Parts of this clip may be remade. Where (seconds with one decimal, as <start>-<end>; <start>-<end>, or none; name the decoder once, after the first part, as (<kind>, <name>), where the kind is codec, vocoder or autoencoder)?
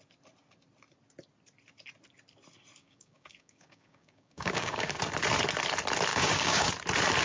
2.8-5.0 (codec, DAC); 6.1-6.7